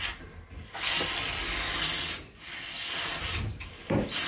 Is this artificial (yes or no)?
no